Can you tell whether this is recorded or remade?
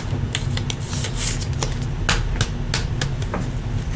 recorded